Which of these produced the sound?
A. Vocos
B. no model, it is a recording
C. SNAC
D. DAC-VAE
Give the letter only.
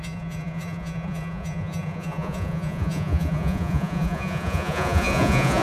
A